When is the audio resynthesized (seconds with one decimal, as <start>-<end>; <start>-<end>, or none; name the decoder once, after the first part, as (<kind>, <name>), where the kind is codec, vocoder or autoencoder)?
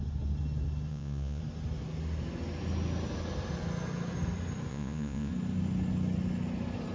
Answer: 0.9-1.4 (vocoder, Vocos); 4.7-5.3